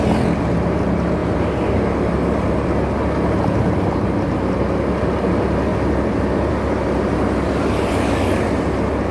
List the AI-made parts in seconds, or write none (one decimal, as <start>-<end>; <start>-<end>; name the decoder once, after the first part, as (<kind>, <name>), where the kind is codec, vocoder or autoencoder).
none